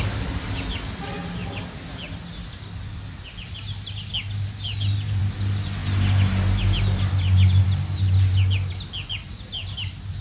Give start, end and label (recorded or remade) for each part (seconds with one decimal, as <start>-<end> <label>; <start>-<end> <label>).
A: 0.0-10.2 recorded